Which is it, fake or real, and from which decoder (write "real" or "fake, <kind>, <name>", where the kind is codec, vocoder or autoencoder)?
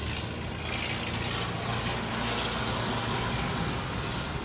real